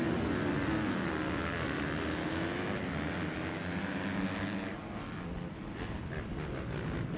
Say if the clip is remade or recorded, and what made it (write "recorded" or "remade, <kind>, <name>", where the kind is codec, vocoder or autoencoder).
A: recorded